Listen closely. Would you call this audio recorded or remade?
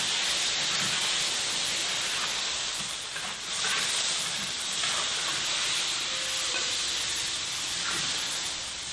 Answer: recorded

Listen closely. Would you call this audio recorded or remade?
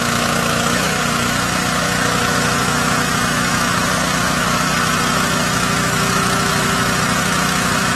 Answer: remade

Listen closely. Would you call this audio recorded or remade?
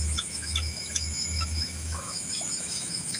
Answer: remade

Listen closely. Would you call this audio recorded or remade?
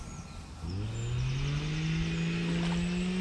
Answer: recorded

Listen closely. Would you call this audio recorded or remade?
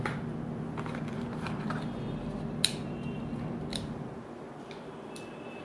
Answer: recorded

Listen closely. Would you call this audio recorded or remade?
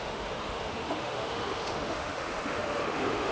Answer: remade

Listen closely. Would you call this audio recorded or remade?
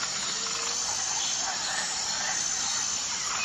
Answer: recorded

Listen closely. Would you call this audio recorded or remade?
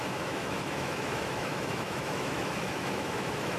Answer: remade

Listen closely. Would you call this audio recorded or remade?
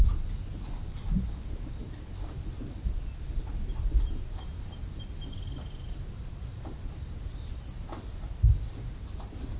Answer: recorded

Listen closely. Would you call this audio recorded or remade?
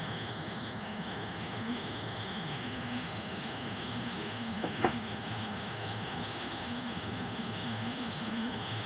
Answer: remade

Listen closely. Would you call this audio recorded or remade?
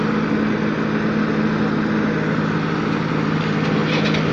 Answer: recorded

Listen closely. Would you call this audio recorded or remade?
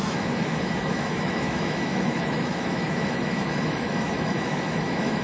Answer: remade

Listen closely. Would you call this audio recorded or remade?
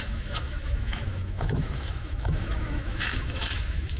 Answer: remade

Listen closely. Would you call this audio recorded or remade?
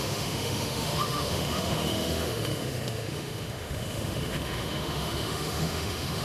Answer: remade